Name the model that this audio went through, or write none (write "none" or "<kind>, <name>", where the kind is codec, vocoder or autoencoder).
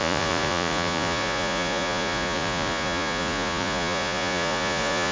vocoder, Vocos